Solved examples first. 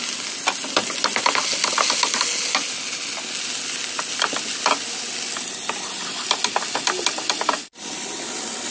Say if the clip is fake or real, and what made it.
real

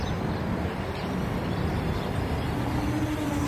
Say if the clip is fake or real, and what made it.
real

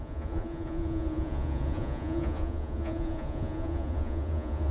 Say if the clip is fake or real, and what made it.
fake, vocoder, Vocos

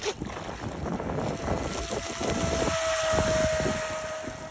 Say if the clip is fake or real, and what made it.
real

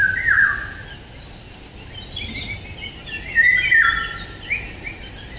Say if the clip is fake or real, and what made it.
real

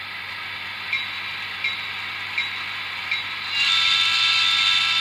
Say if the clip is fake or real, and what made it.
real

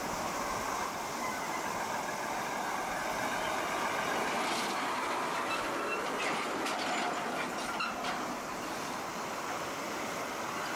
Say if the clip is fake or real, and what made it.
real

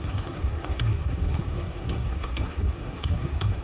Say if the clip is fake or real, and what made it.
fake, codec, SNAC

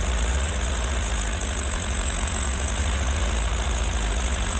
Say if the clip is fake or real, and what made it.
fake, vocoder, Vocos